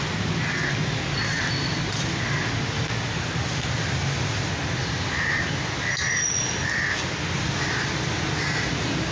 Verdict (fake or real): real